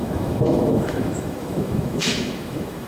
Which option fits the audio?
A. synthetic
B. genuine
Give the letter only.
A